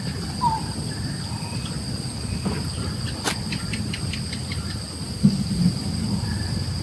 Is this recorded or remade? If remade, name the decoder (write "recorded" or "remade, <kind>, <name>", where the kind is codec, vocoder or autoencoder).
recorded